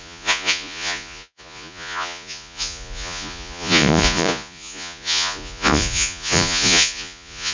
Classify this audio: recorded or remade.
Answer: remade